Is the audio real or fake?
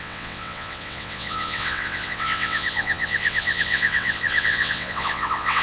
fake